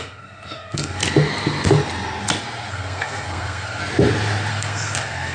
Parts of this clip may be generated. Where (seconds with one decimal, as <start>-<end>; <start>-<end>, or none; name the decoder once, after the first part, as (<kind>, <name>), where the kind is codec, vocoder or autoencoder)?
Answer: 0.0-1.0 (codec, SNAC); 2.7-3.8; 4.5-5.3